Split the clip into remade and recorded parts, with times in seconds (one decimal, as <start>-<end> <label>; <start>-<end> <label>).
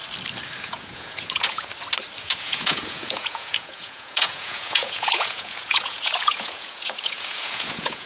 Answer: 0.0-0.6 recorded; 0.6-1.7 remade; 1.7-2.2 recorded; 2.2-8.1 remade